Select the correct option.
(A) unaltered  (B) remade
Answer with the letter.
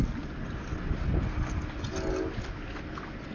A